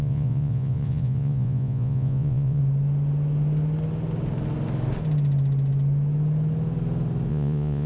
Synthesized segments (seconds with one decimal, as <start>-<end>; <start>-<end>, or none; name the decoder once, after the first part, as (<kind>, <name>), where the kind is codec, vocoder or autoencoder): 0.0-2.6 (vocoder, Vocos); 7.3-7.9